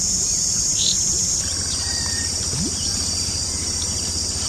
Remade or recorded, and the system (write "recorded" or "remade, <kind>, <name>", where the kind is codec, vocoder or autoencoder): remade, vocoder, BigVGAN v2